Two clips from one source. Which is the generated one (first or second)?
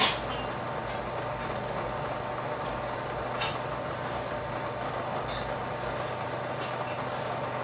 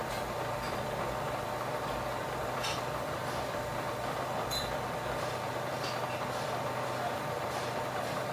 second